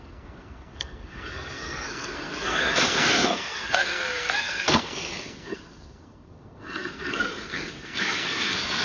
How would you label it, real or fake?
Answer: fake